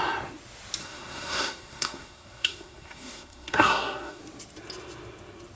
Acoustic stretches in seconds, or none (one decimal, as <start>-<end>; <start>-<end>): 0.0-0.8; 4.2-5.6